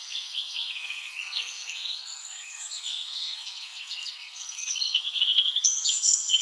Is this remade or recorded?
remade